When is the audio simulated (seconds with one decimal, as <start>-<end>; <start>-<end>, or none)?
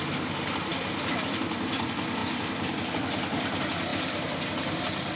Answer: none